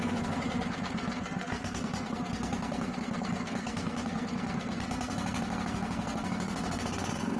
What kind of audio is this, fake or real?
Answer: fake